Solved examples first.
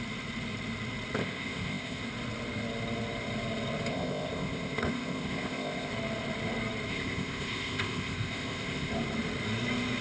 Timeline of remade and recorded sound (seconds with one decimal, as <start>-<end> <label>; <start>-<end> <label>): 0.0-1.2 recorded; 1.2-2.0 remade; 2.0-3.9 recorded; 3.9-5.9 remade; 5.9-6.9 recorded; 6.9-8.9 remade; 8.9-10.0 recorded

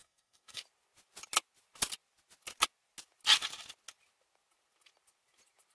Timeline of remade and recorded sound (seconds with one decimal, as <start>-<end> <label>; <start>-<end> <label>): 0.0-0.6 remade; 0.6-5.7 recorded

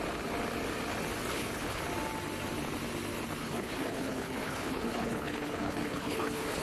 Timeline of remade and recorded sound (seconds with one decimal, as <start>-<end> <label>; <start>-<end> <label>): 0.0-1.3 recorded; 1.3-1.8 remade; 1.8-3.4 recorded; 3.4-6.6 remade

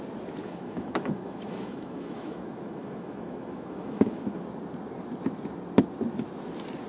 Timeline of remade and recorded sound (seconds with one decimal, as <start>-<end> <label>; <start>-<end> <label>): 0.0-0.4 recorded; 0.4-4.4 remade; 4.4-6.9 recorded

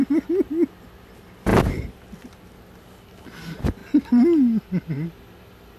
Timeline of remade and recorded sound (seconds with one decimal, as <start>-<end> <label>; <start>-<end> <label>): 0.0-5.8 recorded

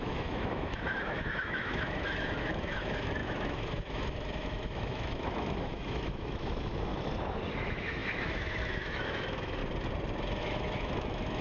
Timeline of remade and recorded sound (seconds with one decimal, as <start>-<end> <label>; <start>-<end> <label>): 0.0-6.9 remade; 6.9-7.5 recorded; 7.5-9.6 remade; 9.6-10.4 recorded; 10.4-11.4 remade

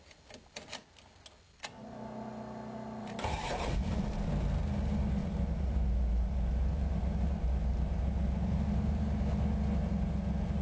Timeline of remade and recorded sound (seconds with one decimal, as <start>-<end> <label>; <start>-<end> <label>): 0.0-3.0 recorded; 3.0-3.6 remade; 3.6-5.2 recorded; 5.2-9.2 remade; 9.2-10.6 recorded